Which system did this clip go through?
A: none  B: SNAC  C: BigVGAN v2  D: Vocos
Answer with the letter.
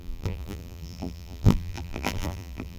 C